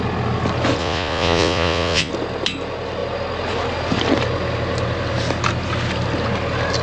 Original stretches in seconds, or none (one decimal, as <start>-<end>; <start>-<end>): 0.0-0.8; 2.1-6.8